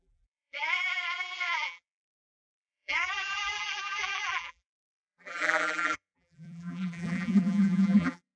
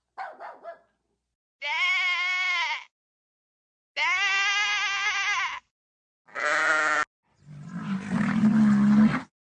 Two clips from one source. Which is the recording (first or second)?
second